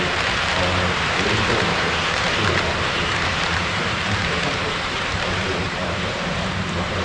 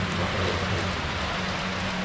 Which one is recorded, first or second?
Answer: second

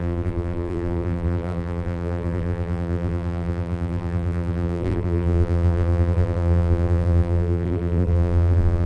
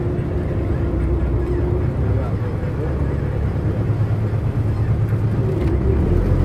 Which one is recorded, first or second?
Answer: second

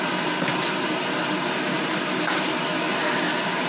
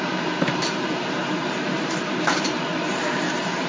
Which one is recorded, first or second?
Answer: first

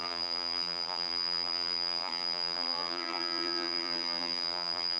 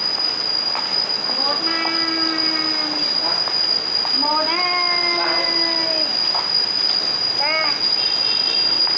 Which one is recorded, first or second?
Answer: second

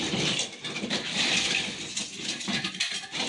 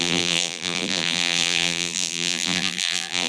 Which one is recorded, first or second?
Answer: first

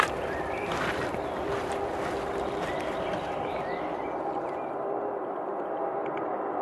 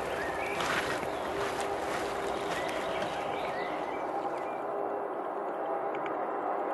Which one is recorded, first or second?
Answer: second